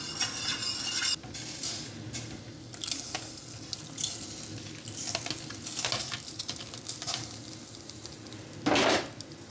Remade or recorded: recorded